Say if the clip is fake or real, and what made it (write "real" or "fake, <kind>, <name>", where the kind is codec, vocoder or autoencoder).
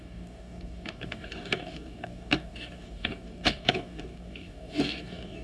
fake, codec, DAC